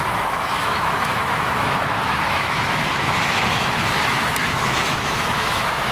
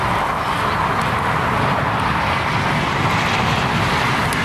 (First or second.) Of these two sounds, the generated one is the first